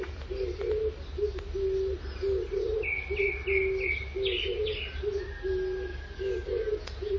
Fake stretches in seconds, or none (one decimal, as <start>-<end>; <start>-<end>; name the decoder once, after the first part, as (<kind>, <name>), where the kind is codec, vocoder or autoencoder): 5.9-6.8 (codec, DAC)